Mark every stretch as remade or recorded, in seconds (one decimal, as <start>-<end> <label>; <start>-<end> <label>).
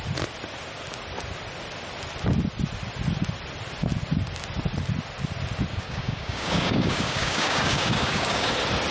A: 0.0-5.7 recorded; 5.7-8.5 remade; 8.5-8.9 recorded